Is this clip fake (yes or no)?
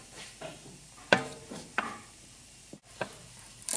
yes